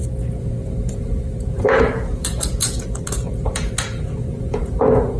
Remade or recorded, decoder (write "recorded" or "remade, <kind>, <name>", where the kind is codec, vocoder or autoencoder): remade, vocoder, Vocos